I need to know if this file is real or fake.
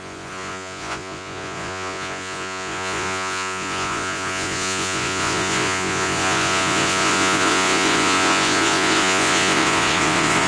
fake